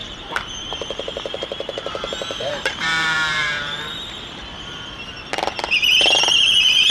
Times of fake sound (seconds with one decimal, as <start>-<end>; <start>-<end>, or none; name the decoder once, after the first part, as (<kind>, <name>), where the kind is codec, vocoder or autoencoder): 0.0-4.1 (vocoder, BigVGAN v2)